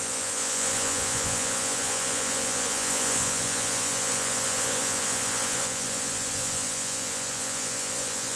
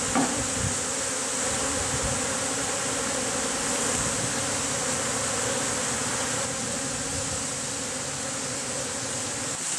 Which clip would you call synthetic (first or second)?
first